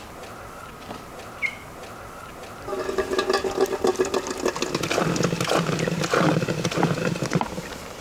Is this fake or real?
real